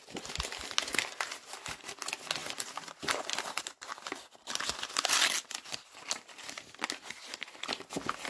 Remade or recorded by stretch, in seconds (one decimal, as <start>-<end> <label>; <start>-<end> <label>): 0.0-8.3 recorded